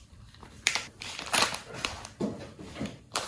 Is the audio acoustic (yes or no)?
no